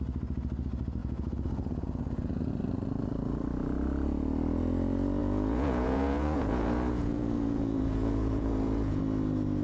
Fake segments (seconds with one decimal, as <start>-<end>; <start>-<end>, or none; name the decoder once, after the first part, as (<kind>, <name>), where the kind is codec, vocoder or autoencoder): 1.0-2.5 (vocoder, Vocos); 5.2-9.0